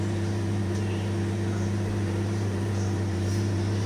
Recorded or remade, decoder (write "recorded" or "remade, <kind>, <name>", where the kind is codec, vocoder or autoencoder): remade, vocoder, BigVGAN v2